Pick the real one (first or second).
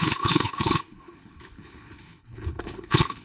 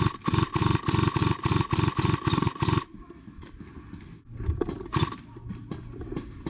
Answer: second